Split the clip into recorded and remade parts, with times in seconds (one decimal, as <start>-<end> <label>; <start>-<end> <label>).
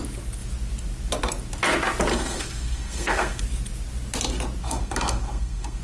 0.0-2.1 recorded; 2.1-3.4 remade; 3.4-4.6 recorded; 4.6-5.8 remade